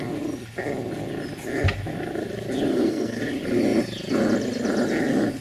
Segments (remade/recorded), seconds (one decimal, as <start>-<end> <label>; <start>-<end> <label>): 0.0-2.7 recorded; 2.7-3.2 remade; 3.2-5.4 recorded